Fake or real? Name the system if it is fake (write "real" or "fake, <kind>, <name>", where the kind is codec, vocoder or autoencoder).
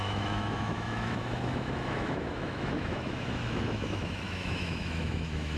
fake, autoencoder, DAC-VAE